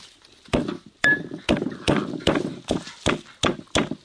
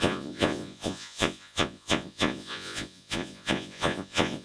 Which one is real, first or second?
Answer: first